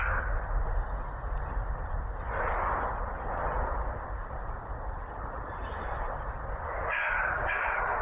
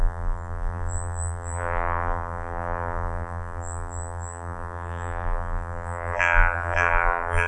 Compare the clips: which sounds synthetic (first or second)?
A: second